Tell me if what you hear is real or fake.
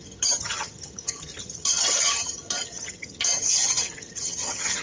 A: fake